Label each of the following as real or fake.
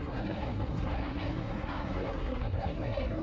fake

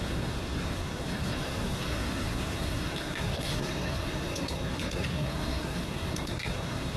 fake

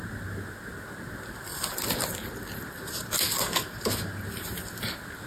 real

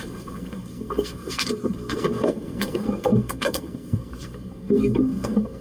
fake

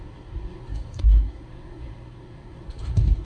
fake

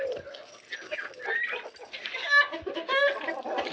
real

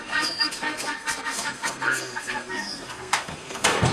fake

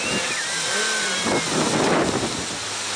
real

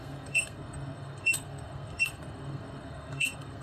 fake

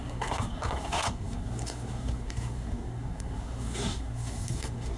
fake